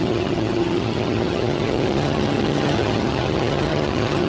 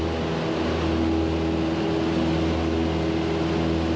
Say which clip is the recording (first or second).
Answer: second